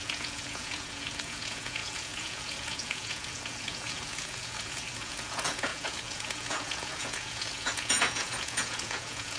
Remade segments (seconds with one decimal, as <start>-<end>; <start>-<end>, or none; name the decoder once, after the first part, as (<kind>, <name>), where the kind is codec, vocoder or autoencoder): 0.0-9.4 (vocoder, Vocos)